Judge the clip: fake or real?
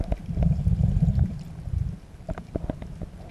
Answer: real